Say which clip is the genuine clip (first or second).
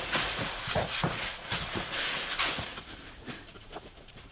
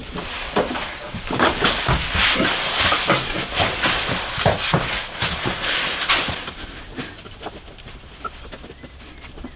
second